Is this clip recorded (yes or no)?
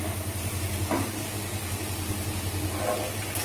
yes